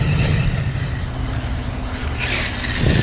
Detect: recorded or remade recorded